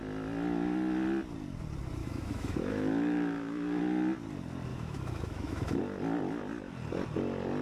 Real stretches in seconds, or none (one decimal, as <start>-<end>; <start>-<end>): 0.0-2.0; 3.8-4.7; 5.8-7.6